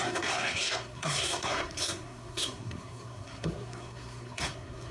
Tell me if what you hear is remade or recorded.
remade